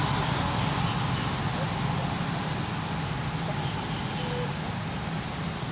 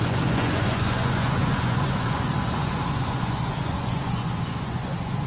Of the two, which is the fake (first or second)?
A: second